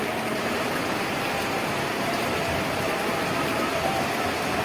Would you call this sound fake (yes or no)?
no